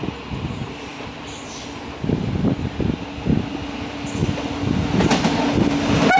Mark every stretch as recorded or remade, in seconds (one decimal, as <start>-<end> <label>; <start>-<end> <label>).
0.0-6.2 recorded

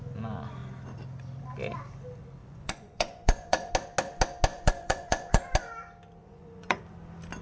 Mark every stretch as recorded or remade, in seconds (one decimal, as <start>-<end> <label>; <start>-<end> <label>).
0.0-2.4 recorded; 2.4-3.7 remade; 3.7-4.5 recorded; 4.5-5.4 remade; 5.4-6.2 recorded; 6.2-6.8 remade; 6.8-7.4 recorded

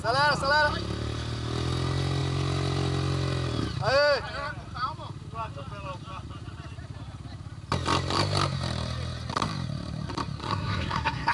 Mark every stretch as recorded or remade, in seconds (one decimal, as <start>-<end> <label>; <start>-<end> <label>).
0.0-10.4 recorded; 10.4-11.3 remade

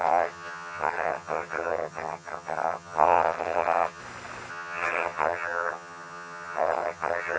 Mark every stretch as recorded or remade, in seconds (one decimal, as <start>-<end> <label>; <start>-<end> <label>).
0.0-4.0 remade; 4.0-4.5 recorded; 4.5-7.4 remade

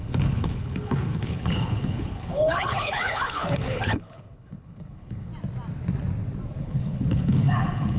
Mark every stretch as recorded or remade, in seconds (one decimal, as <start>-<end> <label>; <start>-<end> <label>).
0.0-5.3 remade; 5.3-6.6 recorded; 6.6-8.0 remade

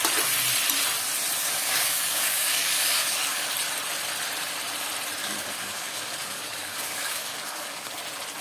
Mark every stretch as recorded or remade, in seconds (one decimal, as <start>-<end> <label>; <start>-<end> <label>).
0.0-1.4 recorded; 1.4-3.5 remade; 3.5-5.2 recorded; 5.2-8.0 remade; 8.0-8.4 recorded

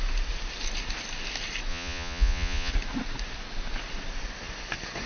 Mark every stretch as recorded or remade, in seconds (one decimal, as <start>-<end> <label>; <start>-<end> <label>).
0.0-1.7 recorded; 1.7-2.7 remade; 2.7-5.1 recorded